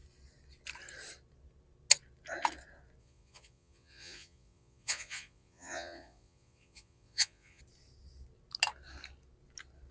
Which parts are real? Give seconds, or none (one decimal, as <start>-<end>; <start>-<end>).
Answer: 0.0-3.0; 7.6-9.9